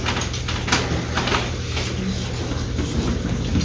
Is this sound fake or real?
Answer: real